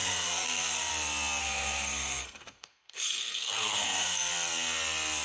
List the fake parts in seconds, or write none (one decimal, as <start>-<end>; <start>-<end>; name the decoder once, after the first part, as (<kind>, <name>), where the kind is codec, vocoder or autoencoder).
0.0-0.9 (codec, SNAC); 1.4-4.3